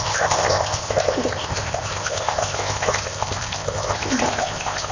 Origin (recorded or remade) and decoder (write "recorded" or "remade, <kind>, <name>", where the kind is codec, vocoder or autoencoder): remade, codec, ZipCodec